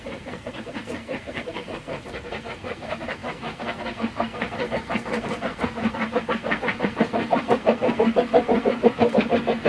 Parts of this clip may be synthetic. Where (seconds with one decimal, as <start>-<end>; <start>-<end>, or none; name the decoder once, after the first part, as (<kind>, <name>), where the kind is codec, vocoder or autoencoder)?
0.0-9.7 (codec, SNAC)